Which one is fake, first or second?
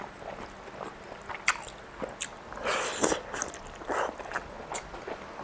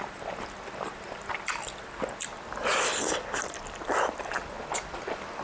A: second